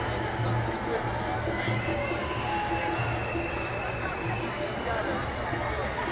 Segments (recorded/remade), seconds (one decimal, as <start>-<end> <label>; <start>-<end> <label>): 0.0-1.9 recorded; 1.9-2.7 remade; 2.7-6.1 recorded